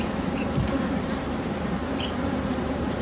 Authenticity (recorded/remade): remade